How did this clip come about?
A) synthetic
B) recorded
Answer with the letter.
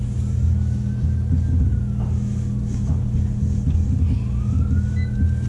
B